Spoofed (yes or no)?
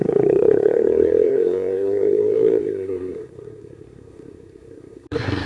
yes